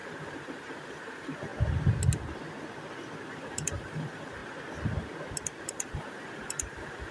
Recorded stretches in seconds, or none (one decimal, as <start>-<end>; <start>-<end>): 1.5-3.3; 4.4-5.6